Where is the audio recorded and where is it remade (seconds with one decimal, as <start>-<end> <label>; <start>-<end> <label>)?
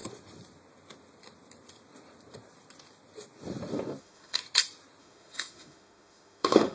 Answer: 0.0-4.0 recorded; 4.0-4.4 remade; 4.4-5.0 recorded; 5.0-6.7 remade